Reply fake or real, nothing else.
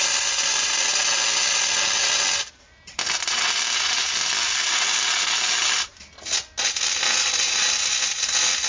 real